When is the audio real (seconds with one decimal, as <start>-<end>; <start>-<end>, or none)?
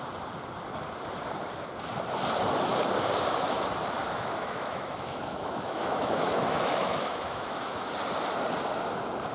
0.0-4.0; 7.9-9.3